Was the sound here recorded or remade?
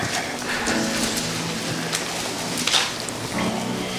recorded